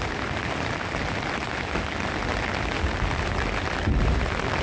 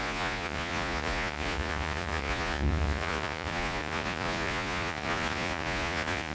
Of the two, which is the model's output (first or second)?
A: second